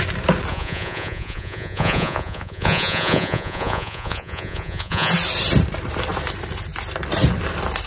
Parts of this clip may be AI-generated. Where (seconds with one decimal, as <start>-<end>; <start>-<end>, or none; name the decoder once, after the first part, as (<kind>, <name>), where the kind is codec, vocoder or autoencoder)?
0.5-5.1 (vocoder, Vocos)